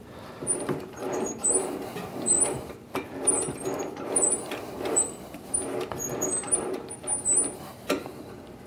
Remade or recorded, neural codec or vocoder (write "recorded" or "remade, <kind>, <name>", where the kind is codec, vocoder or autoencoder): remade, vocoder, BigVGAN v2